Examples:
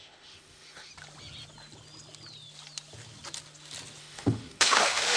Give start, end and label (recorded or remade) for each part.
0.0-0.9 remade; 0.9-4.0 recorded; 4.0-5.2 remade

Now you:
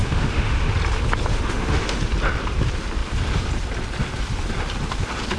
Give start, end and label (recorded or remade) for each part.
0.0-0.7 remade; 0.7-1.3 recorded; 1.3-2.0 remade; 2.0-5.4 recorded

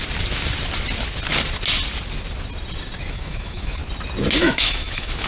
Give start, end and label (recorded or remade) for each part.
0.0-3.1 recorded; 3.1-3.8 remade; 3.8-4.4 recorded; 4.4-5.3 remade

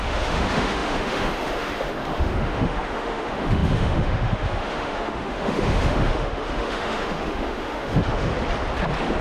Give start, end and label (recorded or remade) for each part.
0.0-8.3 remade; 8.3-9.2 recorded

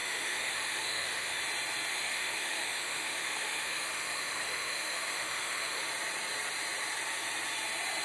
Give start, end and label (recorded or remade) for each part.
0.0-1.4 remade; 1.4-1.9 recorded; 1.9-5.9 remade; 5.9-8.0 recorded